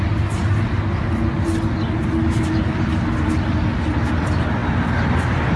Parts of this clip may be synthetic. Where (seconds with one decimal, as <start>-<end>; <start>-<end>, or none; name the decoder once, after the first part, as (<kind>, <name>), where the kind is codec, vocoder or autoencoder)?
none